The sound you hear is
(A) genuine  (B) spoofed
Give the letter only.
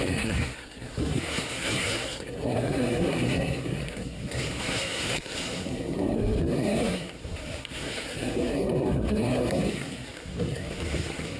B